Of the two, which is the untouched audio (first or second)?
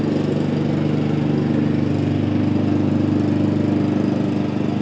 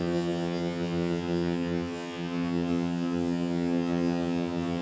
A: first